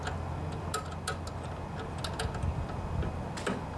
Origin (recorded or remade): recorded